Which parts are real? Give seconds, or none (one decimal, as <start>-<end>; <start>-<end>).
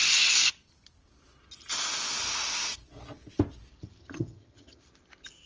0.0-4.0; 4.8-5.5